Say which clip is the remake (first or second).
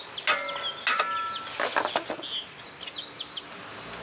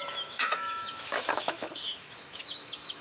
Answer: second